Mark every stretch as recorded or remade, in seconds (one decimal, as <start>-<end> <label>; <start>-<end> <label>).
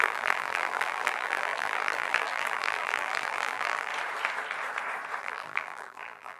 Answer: 0.0-3.9 remade; 3.9-5.2 recorded; 5.2-6.4 remade